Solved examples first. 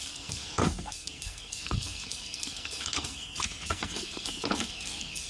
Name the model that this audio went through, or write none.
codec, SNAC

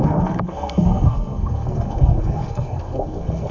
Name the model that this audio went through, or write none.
codec, SNAC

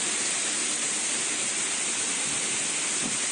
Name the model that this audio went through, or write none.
none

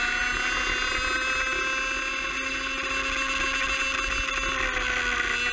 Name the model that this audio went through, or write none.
none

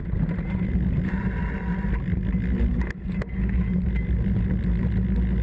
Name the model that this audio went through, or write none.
none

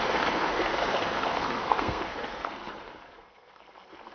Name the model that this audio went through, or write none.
codec, SNAC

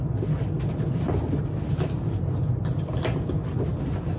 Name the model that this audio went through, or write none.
none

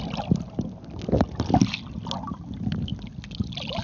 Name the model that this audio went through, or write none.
none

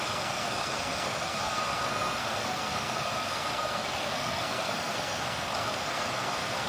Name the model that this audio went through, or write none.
codec, SNAC